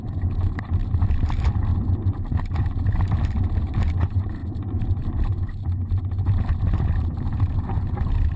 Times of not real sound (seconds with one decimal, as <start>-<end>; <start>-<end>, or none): 0.0-1.7; 2.4-8.4